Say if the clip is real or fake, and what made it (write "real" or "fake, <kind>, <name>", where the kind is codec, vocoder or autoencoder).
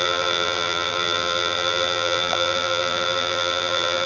fake, vocoder, BigVGAN v2